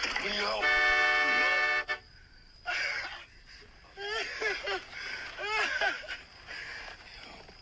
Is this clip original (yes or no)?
yes